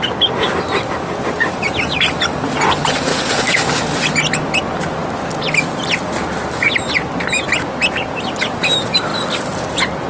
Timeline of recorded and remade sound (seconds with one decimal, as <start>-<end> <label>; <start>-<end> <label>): 0.0-3.1 recorded; 3.1-3.7 remade; 3.7-10.1 recorded